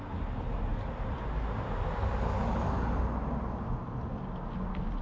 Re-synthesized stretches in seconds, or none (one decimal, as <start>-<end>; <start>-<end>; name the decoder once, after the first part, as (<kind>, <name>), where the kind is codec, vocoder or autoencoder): none